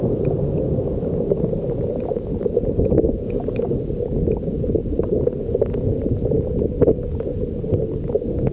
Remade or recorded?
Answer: recorded